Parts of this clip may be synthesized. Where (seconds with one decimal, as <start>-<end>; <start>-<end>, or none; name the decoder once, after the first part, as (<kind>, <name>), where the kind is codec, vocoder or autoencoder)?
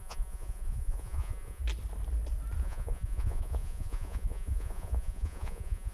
0.0-1.6 (vocoder, Vocos); 2.6-5.9